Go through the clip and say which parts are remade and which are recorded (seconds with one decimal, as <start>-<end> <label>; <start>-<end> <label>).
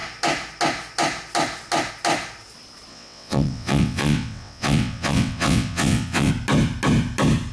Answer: 0.0-2.9 recorded; 2.9-6.3 remade; 6.3-7.5 recorded